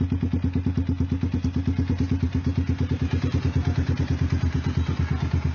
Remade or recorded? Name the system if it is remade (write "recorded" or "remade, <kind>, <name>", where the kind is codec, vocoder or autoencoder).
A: recorded